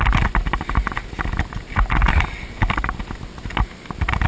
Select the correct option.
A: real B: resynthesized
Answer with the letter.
A